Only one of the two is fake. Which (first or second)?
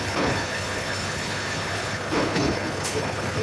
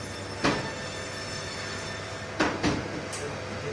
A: first